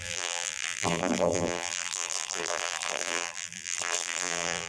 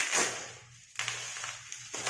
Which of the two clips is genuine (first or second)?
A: second